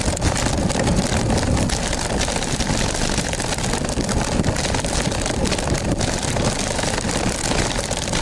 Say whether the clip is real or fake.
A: real